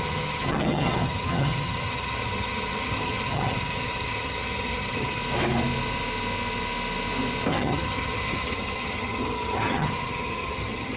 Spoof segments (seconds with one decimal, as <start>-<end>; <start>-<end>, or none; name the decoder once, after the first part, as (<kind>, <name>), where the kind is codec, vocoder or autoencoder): 0.0-5.2 (vocoder, HiFi-GAN); 7.5-11.0